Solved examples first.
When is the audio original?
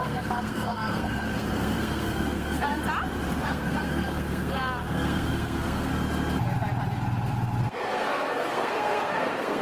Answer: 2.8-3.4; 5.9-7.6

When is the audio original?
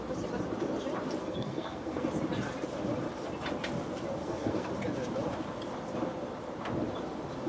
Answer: 0.0-1.2; 2.1-4.2; 4.7-7.5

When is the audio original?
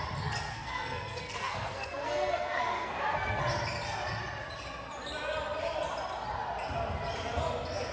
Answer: 0.0-0.5; 3.4-7.9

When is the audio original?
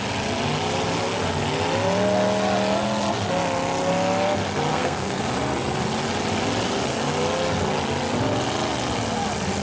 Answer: 0.0-4.7; 5.2-9.6